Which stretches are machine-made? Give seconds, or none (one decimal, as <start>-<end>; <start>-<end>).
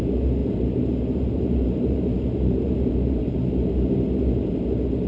0.4-3.5